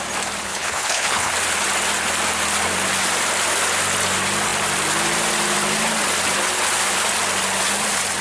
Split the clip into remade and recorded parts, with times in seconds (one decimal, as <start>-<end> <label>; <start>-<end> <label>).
0.0-0.4 recorded; 0.4-1.3 remade; 1.3-8.2 recorded